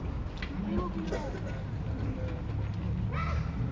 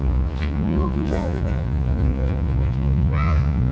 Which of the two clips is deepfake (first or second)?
second